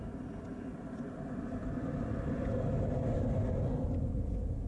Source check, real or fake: fake